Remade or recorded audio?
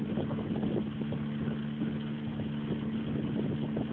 recorded